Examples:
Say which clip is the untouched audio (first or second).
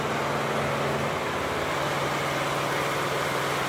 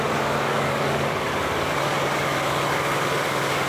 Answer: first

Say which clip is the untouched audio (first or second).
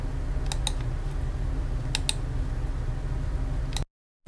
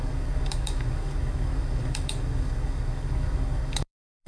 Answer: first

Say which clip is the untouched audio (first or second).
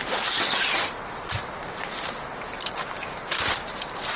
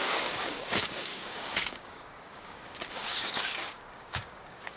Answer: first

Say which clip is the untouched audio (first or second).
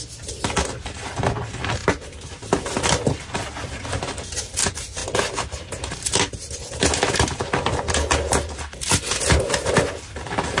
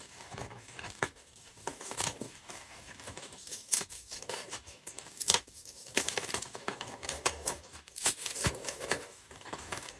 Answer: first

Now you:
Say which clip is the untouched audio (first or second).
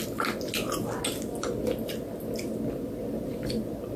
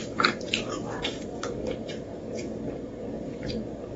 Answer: first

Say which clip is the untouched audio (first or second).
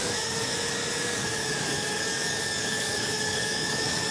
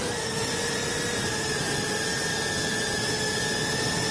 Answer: second